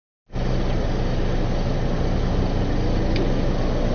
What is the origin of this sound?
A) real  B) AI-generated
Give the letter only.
A